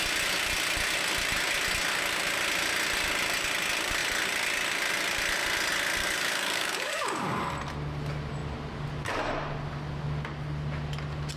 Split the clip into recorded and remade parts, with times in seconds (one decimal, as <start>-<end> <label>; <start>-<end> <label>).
0.0-6.0 recorded; 6.0-7.5 remade; 7.5-11.4 recorded